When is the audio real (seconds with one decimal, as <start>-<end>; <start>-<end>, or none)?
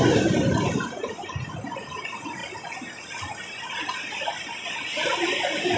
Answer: 0.0-5.8